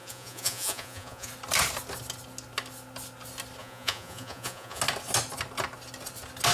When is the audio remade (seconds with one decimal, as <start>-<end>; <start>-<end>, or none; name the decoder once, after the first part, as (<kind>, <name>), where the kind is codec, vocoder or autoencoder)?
0.0-1.3 (vocoder, Vocos); 3.6-4.8